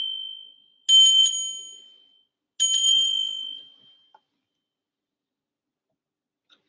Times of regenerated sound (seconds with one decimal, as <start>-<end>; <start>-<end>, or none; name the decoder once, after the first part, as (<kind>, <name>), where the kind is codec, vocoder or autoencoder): none